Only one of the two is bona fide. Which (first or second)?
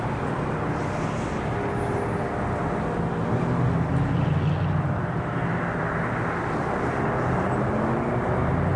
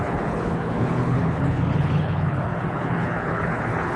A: first